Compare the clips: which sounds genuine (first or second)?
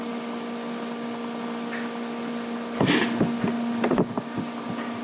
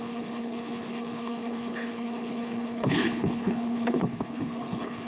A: first